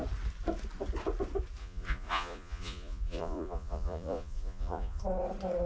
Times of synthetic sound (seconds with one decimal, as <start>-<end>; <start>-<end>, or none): 1.6-5.0